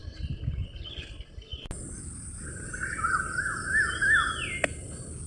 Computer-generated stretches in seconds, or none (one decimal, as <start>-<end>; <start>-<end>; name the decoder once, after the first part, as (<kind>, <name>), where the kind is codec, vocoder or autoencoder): none